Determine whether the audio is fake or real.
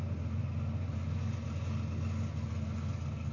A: real